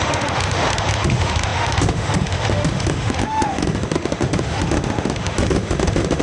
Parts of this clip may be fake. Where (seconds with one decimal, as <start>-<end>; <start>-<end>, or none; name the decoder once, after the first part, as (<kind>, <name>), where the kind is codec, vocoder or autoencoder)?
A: 0.0-6.2 (autoencoder, DAC-VAE)